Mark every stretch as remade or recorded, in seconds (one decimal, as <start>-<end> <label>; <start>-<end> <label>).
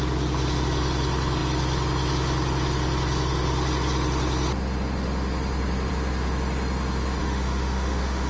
0.0-7.2 recorded; 7.2-8.3 remade